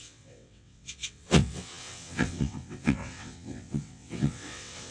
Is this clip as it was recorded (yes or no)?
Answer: no